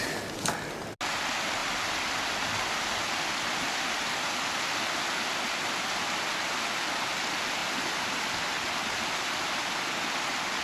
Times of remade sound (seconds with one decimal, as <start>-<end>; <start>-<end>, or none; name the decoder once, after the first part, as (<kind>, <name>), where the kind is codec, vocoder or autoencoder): none